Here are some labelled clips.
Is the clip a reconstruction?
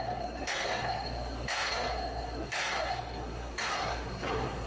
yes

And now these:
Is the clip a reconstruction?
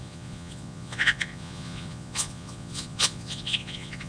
yes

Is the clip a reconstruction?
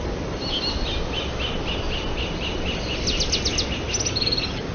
no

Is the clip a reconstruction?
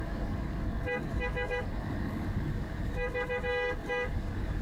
yes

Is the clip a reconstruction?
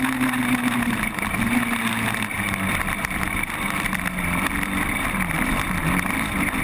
no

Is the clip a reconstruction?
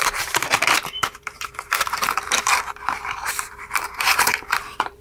yes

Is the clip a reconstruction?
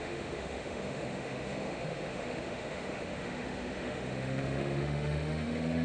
yes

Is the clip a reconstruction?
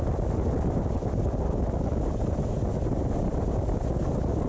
no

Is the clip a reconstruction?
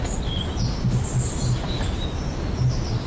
no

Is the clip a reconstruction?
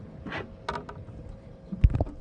no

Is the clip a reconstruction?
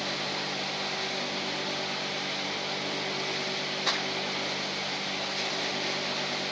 no